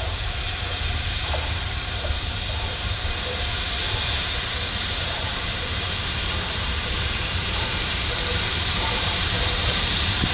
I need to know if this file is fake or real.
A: fake